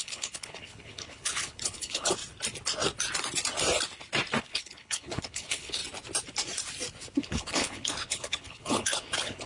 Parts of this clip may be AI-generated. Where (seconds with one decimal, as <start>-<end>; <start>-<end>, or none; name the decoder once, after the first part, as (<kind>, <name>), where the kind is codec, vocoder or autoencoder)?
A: 0.0-2.2 (codec, HILCodec); 4.4-5.8; 7.2-9.5